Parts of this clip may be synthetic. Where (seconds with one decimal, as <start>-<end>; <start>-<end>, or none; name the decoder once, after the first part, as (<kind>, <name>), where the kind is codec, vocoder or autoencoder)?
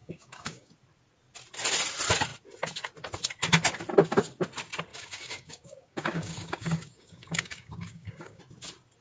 0.0-0.7 (codec, DAC); 4.9-8.4